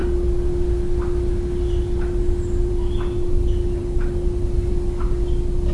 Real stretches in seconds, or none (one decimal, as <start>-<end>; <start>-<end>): 0.0-5.7